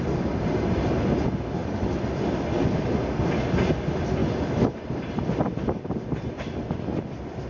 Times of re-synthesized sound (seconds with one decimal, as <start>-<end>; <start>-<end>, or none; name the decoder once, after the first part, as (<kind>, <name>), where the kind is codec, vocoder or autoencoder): 1.6-2.8 (vocoder, BigVGAN v2); 4.2-6.3